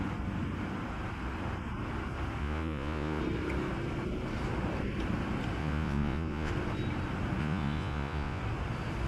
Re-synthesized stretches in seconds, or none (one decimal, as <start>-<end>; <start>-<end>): 2.4-3.2; 5.6-6.5; 7.4-8.4

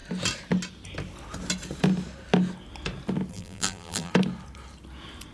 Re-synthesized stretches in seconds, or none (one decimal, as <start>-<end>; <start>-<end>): 3.3-4.1

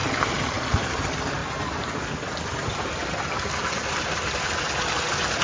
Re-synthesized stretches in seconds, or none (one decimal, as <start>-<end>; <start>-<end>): none

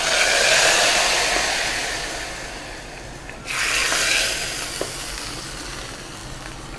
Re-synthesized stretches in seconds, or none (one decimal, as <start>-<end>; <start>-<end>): none

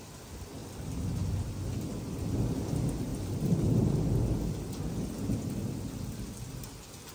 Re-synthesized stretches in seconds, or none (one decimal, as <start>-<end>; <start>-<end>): none

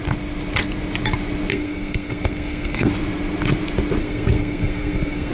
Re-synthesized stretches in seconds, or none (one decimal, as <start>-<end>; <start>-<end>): 1.5-2.9; 4.0-5.3

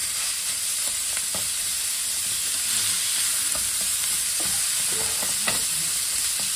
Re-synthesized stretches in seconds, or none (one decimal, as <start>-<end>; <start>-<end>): none

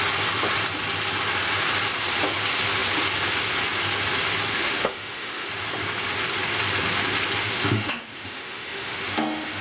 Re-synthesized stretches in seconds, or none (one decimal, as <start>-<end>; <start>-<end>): 4.5-5.5; 7.4-9.6